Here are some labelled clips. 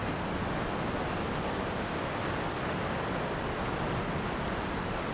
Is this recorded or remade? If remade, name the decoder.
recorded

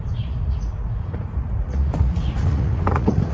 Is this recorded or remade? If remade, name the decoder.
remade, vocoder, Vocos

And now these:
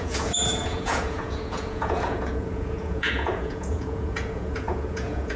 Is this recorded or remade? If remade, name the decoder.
remade, vocoder, Vocos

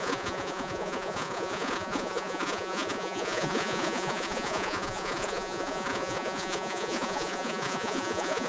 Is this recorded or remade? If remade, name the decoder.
remade, vocoder, Vocos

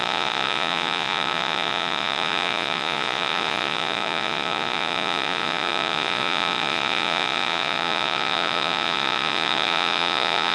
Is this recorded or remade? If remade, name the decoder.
remade, vocoder, Vocos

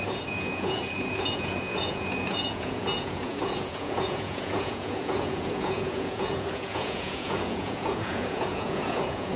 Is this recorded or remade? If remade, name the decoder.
remade, vocoder, Vocos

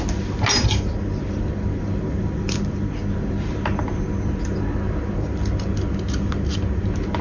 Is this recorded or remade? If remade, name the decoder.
recorded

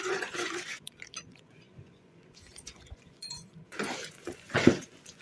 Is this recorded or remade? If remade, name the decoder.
remade, vocoder, Vocos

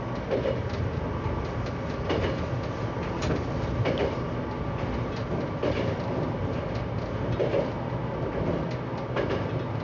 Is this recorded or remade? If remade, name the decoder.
recorded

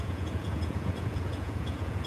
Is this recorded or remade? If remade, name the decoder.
remade, vocoder, Vocos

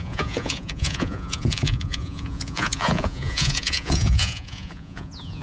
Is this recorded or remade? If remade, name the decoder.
remade, vocoder, Vocos